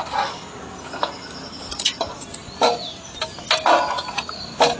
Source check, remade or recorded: recorded